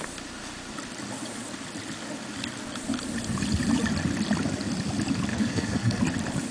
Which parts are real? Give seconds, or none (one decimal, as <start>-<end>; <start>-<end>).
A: 0.0-5.3; 6.0-6.5